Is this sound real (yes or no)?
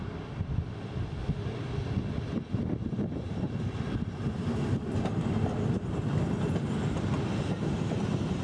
yes